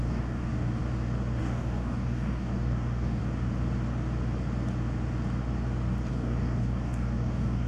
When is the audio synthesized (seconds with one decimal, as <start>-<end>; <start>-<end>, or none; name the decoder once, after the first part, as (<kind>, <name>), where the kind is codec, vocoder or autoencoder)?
0.0-0.8 (codec, DAC); 1.4-3.2; 6.1-7.7